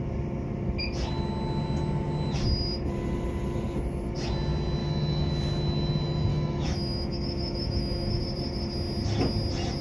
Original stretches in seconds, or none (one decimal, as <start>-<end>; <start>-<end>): 0.0-4.8; 5.3-6.3; 8.2-9.8